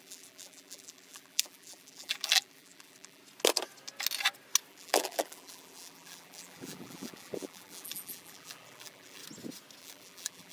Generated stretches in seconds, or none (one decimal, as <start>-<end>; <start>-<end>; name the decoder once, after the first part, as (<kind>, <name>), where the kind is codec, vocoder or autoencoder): 0.0-3.2 (vocoder, BigVGAN v2); 4.7-9.2; 9.8-10.5